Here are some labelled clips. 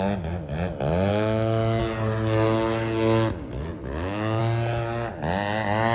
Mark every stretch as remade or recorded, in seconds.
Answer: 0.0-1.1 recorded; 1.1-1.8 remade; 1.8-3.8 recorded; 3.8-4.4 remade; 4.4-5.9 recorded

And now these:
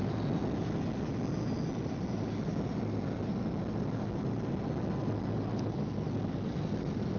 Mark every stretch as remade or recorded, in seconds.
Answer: 0.0-7.2 recorded

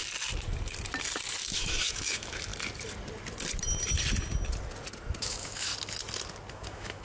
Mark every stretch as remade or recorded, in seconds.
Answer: 0.0-1.4 recorded; 1.4-2.5 remade; 2.5-5.2 recorded; 5.2-5.7 remade; 5.7-6.5 recorded; 6.5-7.0 remade

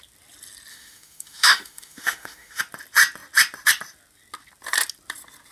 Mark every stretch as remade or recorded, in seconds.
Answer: 0.0-0.7 recorded; 0.7-2.6 remade; 2.6-5.5 recorded

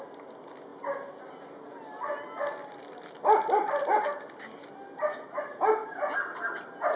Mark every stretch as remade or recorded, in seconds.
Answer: 0.0-7.0 recorded